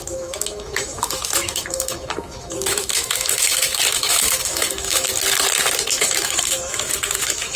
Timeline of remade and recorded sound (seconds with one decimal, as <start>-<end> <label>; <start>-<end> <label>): 0.0-5.1 remade; 5.1-6.0 recorded; 6.0-7.6 remade